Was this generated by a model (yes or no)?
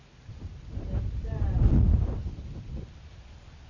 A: no